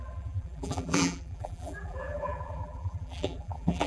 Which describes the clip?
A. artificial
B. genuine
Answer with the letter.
A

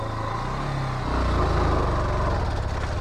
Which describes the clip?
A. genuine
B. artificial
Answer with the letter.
A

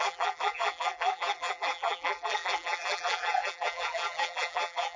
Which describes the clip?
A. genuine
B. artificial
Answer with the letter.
B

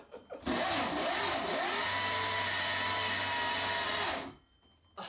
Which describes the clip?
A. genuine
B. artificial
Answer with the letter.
A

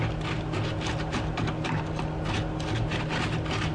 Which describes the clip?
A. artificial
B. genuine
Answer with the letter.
A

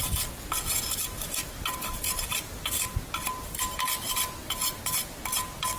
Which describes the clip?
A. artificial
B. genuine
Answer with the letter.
B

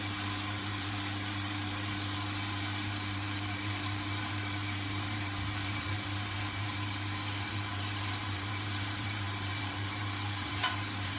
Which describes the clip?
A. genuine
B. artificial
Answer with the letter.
B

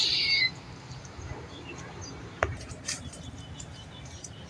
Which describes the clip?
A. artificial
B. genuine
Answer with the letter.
A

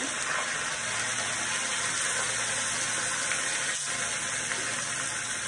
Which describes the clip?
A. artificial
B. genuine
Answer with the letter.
B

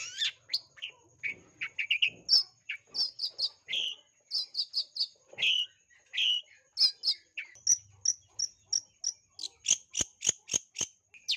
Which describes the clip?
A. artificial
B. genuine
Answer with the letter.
B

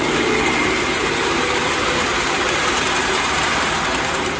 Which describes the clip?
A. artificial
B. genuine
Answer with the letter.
A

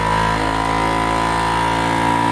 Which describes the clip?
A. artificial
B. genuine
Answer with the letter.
B